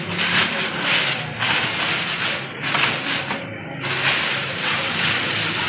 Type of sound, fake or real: real